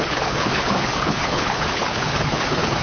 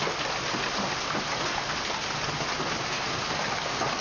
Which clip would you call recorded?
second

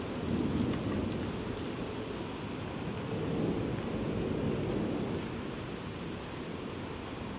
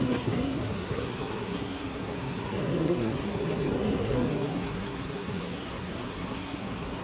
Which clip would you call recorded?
first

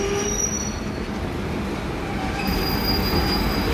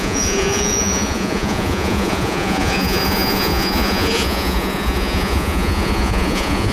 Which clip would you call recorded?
first